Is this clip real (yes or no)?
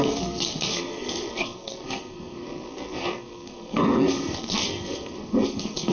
no